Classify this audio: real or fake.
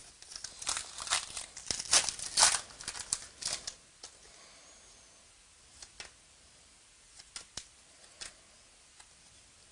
real